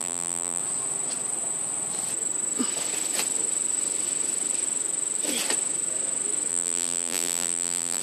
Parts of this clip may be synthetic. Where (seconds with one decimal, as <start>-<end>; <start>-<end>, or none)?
0.0-0.6; 6.5-8.0